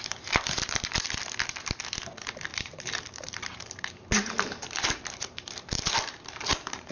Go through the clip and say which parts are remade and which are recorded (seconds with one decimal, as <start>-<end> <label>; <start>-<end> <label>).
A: 0.0-2.5 recorded; 2.5-6.9 remade